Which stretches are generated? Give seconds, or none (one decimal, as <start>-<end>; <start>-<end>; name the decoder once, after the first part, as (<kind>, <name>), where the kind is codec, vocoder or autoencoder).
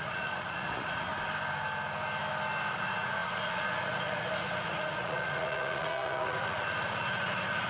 0.0-1.1 (vocoder, Vocos); 2.7-7.7